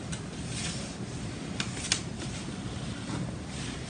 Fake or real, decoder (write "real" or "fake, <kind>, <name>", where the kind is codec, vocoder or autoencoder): real